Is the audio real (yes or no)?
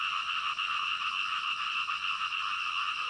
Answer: yes